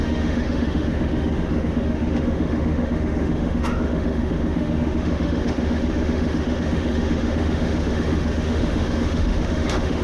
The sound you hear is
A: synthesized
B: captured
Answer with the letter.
A